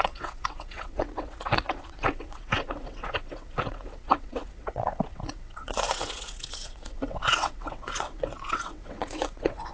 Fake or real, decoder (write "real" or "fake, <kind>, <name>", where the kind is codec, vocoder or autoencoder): fake, vocoder, WaveNeXt